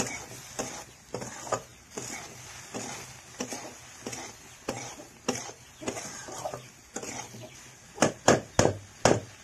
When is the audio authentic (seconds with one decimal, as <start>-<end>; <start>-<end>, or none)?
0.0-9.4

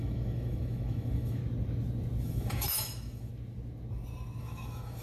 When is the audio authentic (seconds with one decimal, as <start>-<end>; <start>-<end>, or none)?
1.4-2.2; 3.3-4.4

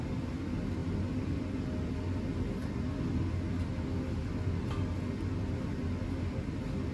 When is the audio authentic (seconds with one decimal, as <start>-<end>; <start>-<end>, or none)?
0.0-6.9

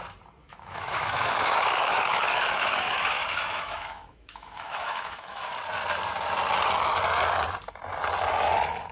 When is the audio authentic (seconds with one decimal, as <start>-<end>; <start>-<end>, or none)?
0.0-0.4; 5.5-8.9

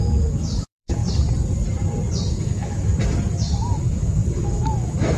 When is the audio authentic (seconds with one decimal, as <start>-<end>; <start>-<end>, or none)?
1.0-2.3; 2.9-3.7